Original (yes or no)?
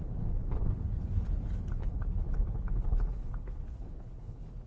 no